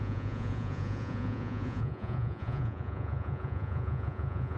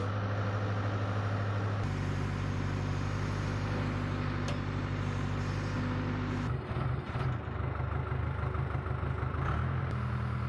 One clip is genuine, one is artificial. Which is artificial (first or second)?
first